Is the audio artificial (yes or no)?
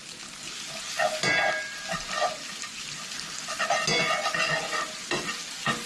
no